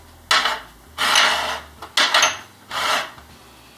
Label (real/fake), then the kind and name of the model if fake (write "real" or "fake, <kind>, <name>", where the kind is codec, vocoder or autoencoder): real